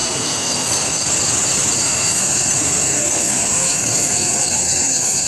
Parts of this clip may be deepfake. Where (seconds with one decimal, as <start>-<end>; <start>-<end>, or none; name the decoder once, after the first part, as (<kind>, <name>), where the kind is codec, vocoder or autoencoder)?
0.0-1.1 (codec, SNAC); 1.8-5.3